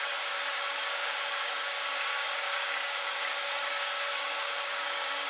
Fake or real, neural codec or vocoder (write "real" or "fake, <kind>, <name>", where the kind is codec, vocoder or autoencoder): fake, codec, DAC